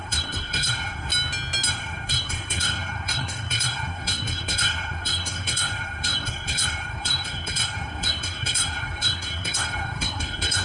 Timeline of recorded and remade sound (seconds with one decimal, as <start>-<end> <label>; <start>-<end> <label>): 0.0-1.1 remade; 1.1-1.7 recorded; 1.7-10.6 remade